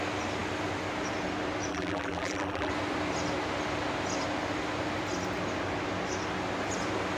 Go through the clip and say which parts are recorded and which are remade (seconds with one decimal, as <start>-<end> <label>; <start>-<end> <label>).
0.0-1.7 recorded; 1.7-2.7 remade; 2.7-7.2 recorded